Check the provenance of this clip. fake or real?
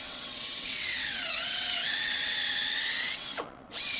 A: fake